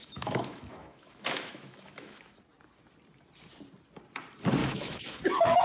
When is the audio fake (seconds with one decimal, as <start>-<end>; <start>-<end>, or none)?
0.0-2.4; 4.6-5.6